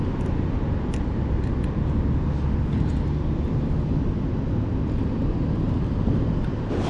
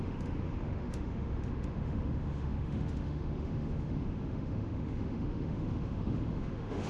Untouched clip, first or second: first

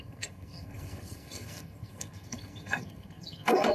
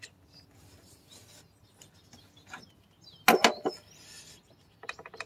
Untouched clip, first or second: second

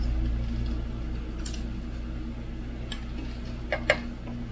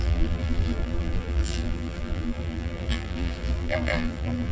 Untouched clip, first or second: first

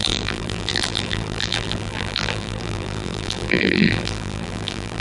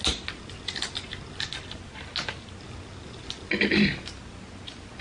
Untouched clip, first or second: second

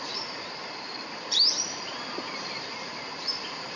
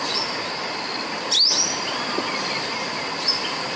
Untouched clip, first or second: second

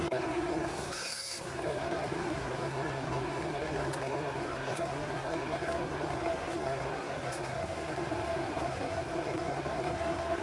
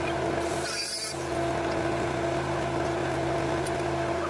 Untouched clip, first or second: second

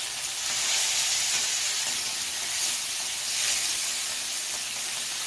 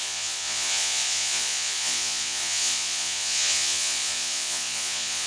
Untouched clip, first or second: first